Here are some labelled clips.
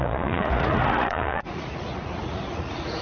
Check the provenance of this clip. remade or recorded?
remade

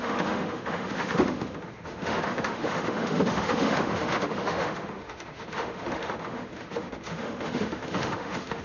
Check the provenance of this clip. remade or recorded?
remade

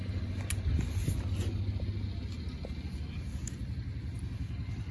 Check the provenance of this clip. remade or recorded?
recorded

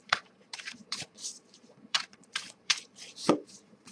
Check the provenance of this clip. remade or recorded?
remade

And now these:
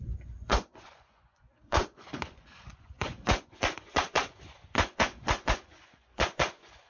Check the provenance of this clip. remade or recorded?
remade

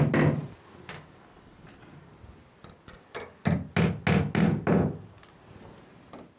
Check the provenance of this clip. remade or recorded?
recorded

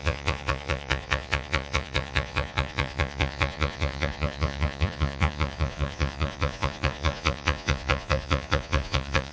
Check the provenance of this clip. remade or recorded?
remade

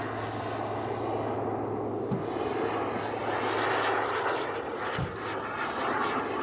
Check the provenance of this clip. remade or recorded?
recorded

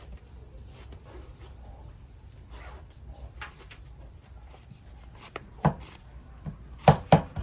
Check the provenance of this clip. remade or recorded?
remade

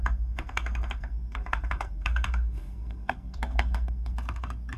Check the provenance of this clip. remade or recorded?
remade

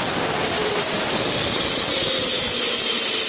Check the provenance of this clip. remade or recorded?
recorded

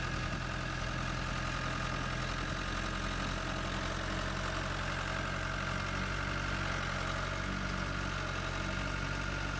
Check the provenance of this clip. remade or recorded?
recorded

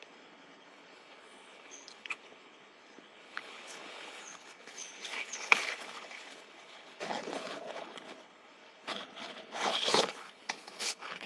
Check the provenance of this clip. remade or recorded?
remade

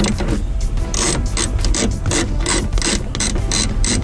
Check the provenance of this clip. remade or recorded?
recorded